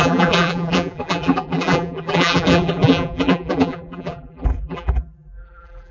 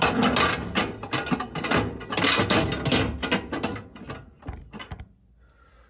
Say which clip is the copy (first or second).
first